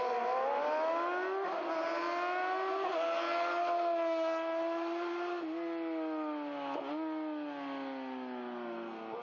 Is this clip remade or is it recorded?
recorded